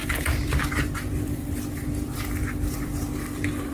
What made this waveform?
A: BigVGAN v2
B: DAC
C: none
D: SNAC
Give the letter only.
A